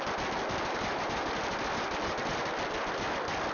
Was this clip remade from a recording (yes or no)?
no